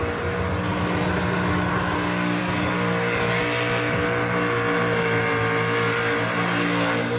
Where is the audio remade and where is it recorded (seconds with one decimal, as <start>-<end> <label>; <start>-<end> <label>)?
0.0-2.4 recorded; 2.4-3.4 remade; 3.4-7.2 recorded